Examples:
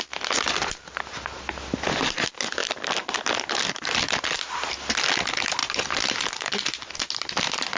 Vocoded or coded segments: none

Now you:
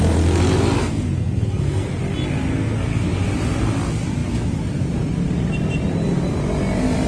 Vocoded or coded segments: 0.8-2.0 (codec, SNAC); 2.5-3.1

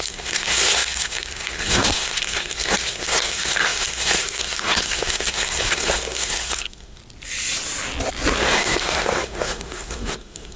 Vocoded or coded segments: 0.0-7.0 (codec, SNAC); 8.4-10.6

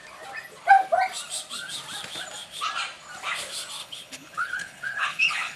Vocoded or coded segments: 3.8-5.6 (codec, HILCodec)

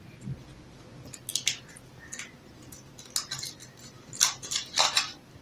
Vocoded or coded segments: none

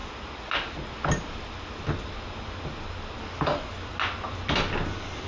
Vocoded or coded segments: none